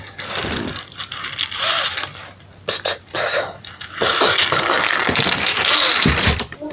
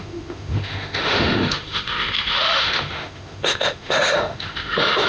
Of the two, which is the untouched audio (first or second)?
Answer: first